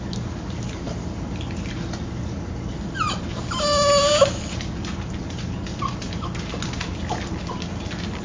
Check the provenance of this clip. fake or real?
real